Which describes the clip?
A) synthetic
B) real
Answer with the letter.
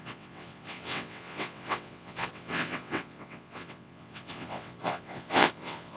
A